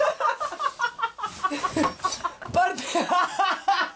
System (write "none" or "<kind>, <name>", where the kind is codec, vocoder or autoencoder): none